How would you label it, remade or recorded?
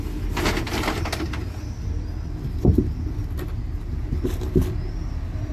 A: recorded